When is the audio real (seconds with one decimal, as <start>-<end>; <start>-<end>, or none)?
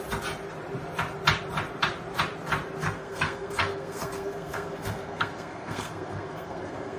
0.0-2.8